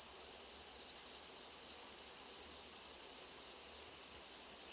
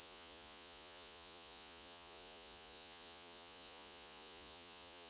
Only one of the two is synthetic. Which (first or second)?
second